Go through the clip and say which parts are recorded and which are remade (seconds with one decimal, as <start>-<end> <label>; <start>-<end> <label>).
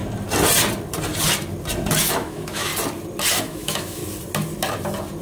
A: 0.0-2.0 recorded; 2.0-2.7 remade; 2.7-3.4 recorded; 3.4-4.0 remade; 4.0-5.2 recorded